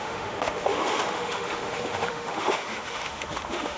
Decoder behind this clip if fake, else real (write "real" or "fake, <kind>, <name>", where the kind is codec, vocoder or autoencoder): fake, autoencoder, DAC-VAE